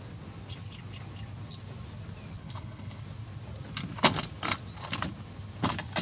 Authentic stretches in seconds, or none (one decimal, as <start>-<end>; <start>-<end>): 0.0-2.4; 3.0-6.0